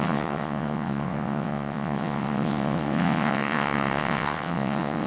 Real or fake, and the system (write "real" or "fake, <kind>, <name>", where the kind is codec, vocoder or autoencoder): fake, vocoder, WaveNeXt